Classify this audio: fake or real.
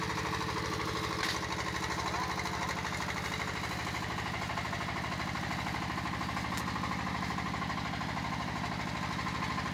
real